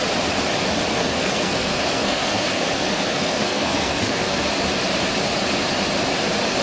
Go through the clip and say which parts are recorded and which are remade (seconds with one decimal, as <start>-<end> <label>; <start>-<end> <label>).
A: 0.0-0.9 recorded; 0.9-4.5 remade; 4.5-6.6 recorded